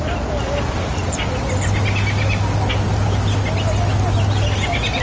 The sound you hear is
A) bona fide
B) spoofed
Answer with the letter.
A